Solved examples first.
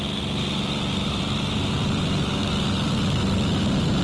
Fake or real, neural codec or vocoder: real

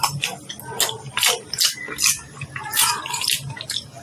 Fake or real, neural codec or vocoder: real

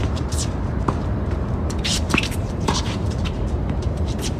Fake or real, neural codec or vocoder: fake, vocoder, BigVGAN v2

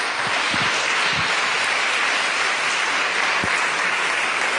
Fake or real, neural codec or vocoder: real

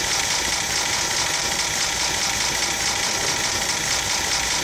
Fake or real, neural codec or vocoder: real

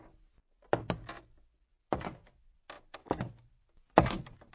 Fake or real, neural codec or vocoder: real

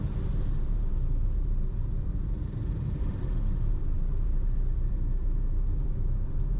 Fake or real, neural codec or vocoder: fake, vocoder, BigVGAN v2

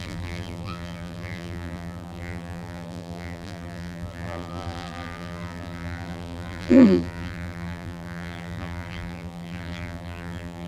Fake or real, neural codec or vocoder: fake, vocoder, BigVGAN v2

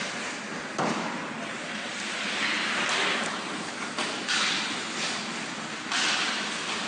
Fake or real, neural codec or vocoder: real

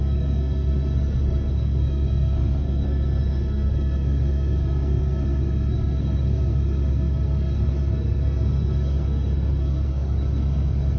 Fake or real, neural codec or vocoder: fake, codec, SNAC